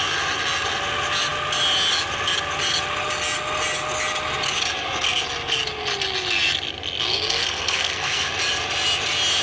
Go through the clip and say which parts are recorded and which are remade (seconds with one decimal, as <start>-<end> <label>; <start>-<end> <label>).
0.0-7.1 recorded; 7.1-8.3 remade; 8.3-9.4 recorded